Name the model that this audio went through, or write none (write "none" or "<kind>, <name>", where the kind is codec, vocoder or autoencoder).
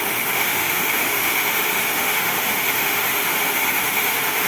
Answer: autoencoder, DAC-VAE